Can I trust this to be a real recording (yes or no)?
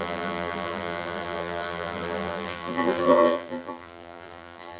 no